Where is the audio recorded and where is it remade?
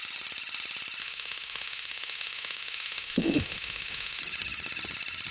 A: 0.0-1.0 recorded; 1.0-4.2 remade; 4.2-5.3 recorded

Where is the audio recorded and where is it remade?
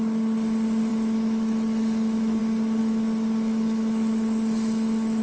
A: 0.0-0.9 recorded; 0.9-2.4 remade; 2.4-2.8 recorded; 2.8-5.2 remade